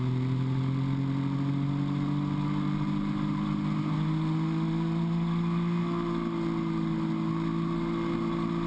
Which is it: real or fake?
real